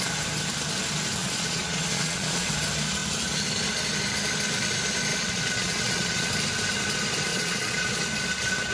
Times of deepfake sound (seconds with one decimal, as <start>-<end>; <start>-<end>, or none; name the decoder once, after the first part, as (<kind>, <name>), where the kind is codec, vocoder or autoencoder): 1.2-2.5 (vocoder, Vocos); 5.1-6.3; 7.3-8.0